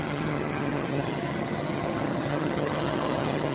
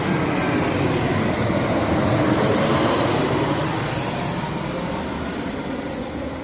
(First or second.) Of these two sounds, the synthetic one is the first